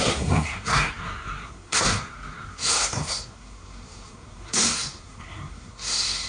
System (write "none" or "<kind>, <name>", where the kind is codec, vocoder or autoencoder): codec, SNAC